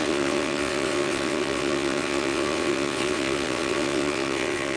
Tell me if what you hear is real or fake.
fake